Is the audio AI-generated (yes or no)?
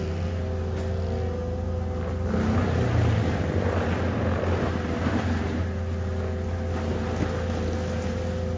no